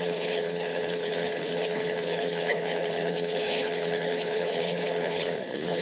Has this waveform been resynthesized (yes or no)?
yes